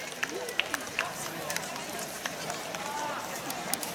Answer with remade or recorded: remade